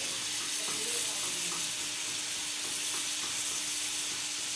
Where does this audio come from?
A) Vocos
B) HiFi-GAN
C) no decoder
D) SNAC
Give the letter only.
C